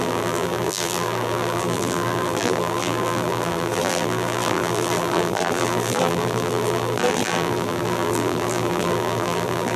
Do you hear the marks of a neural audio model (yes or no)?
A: yes